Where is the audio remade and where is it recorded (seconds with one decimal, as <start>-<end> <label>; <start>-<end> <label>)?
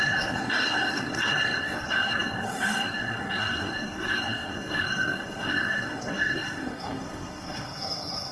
0.0-8.3 remade